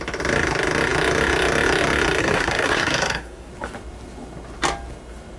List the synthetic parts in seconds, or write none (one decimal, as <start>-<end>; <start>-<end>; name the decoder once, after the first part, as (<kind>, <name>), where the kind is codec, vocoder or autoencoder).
2.2-3.5 (codec, SNAC)